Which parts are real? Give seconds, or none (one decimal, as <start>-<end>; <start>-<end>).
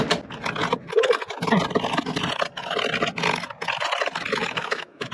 0.0-4.4